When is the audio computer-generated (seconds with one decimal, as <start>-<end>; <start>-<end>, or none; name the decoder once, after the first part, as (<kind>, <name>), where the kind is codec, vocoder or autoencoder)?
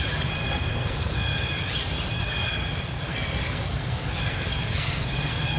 0.4-1.5 (codec, SNAC); 2.2-5.6